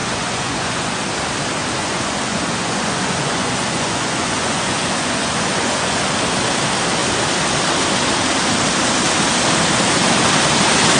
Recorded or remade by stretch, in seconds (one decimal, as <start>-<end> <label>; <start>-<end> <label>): 0.0-1.0 remade; 1.0-1.8 recorded; 1.8-6.0 remade; 6.0-11.0 recorded